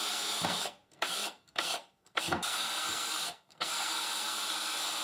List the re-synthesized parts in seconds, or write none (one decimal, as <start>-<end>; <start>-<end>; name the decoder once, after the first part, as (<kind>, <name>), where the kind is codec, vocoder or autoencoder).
0.0-5.0 (codec, SNAC)